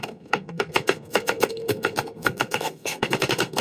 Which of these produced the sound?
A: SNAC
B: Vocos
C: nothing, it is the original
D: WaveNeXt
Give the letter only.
A